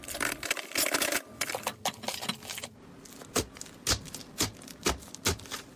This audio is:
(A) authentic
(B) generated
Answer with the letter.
A